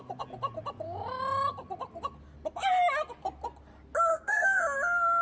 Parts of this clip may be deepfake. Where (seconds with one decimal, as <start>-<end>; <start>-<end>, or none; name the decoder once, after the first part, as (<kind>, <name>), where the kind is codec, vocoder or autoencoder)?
4.1-4.6 (codec, SNAC)